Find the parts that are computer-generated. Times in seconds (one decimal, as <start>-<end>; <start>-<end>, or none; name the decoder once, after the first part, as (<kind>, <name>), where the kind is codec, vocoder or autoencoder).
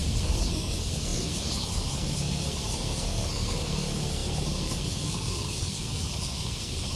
0.0-7.0 (codec, SNAC)